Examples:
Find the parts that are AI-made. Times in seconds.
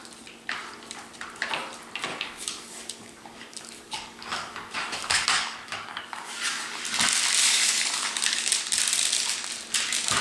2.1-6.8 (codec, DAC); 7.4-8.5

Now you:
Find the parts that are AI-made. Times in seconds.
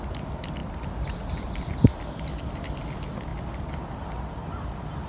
none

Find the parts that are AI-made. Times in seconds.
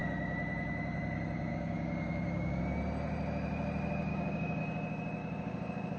1.5-2.6 (codec, DAC); 4.1-4.6; 5.2-6.0